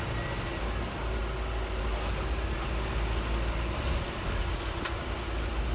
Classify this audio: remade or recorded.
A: recorded